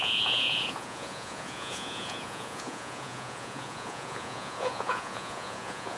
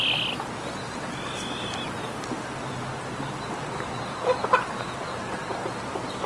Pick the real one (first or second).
second